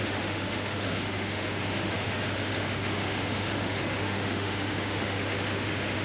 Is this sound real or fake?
fake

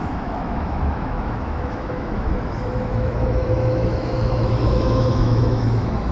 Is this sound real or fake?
fake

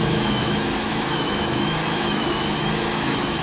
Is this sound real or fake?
fake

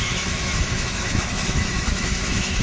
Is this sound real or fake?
fake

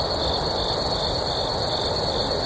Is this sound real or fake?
real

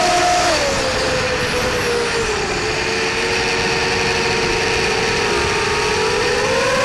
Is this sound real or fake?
real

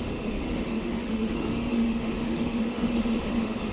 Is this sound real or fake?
fake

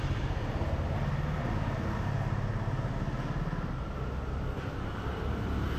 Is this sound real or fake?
real